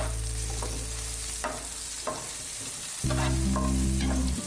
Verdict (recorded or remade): recorded